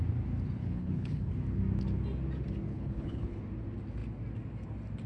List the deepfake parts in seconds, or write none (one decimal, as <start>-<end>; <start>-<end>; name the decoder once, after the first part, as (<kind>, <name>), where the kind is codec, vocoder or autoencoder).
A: 0.6-1.3 (codec, HILCodec); 2.7-3.4